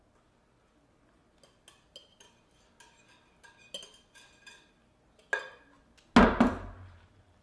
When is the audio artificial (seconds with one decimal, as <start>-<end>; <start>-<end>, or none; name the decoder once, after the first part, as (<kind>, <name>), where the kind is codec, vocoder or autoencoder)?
none